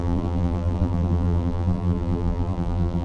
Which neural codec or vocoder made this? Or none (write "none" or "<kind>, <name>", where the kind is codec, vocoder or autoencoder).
vocoder, BigVGAN v2